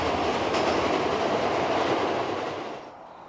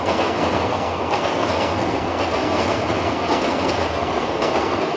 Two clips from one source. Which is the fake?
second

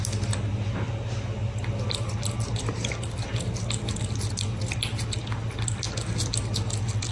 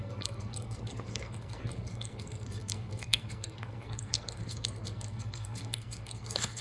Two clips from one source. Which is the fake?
second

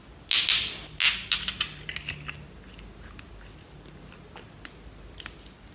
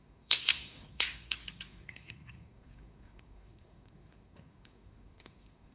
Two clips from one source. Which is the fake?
second